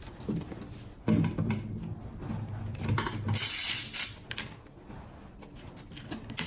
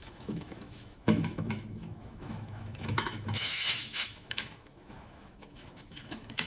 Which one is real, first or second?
first